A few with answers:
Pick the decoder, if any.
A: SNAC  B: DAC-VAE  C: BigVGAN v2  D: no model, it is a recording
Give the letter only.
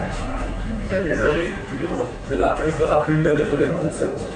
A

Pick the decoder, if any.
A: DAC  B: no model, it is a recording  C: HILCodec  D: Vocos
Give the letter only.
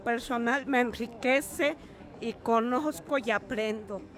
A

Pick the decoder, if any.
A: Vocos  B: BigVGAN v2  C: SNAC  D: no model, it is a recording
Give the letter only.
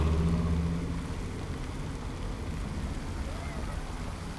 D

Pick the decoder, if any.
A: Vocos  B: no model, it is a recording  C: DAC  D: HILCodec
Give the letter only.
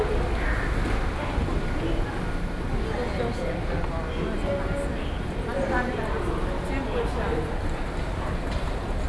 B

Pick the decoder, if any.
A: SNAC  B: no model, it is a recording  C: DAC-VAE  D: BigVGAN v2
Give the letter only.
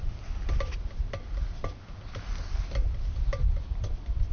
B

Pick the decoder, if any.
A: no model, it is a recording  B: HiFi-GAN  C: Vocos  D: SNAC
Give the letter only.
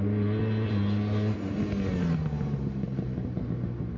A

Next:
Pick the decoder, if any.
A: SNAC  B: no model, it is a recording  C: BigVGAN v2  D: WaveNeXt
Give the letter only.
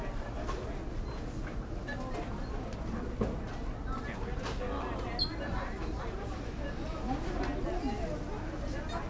B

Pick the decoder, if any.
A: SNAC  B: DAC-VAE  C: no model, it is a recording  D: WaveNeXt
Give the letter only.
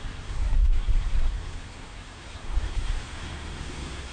A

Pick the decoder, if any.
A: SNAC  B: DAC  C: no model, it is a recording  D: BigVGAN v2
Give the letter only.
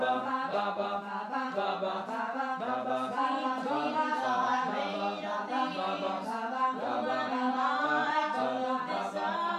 C